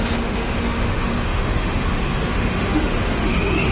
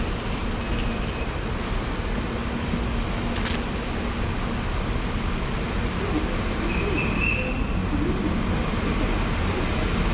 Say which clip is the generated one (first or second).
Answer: first